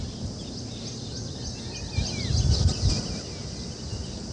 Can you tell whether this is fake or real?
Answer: real